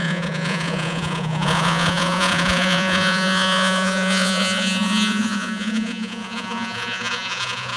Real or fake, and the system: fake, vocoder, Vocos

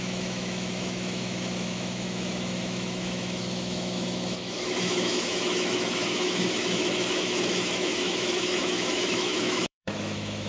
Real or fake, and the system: fake, autoencoder, DAC-VAE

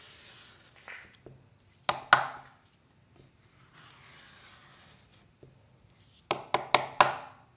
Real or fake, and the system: real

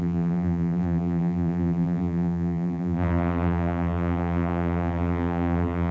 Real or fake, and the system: fake, vocoder, BigVGAN v2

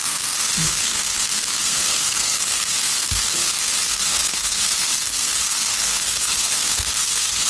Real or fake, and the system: fake, codec, SNAC